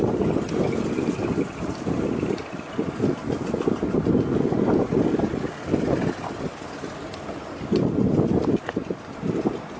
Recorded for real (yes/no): yes